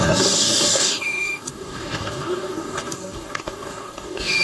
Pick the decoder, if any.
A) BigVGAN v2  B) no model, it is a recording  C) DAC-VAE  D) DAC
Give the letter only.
D